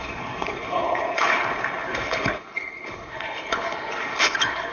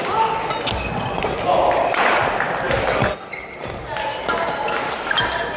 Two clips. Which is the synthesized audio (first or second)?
first